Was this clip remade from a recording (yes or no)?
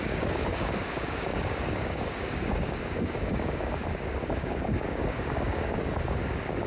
yes